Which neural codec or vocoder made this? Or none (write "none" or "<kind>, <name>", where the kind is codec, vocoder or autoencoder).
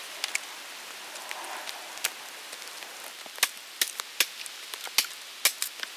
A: none